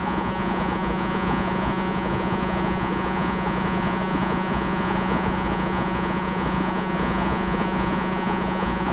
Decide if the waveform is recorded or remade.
remade